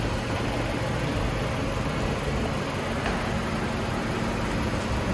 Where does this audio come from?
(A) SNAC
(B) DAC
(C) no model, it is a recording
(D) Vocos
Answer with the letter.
C